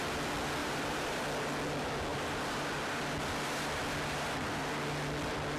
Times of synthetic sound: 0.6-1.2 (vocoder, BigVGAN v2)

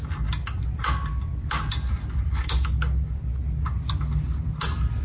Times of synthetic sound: none

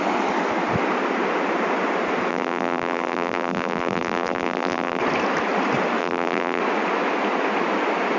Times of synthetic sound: 2.3-5.0 (vocoder, BigVGAN v2); 6.0-6.6